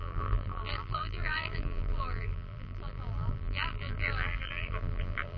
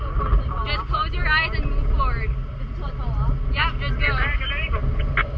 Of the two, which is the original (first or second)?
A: second